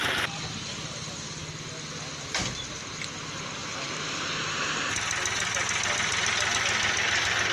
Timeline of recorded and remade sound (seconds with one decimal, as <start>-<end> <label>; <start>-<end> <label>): 0.0-7.5 recorded